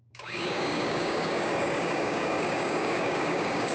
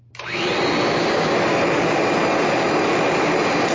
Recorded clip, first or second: second